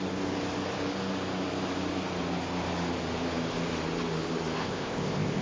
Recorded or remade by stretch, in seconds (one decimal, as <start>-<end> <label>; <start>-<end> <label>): 0.0-4.6 recorded; 4.6-5.4 remade